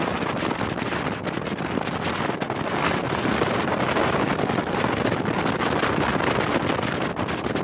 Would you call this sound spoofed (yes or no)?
no